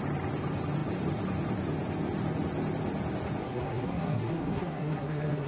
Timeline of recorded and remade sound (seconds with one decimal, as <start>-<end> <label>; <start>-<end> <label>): 0.0-3.4 recorded; 3.4-5.5 remade